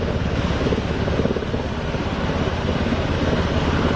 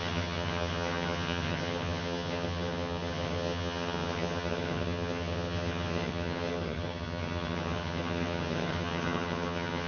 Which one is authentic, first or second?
first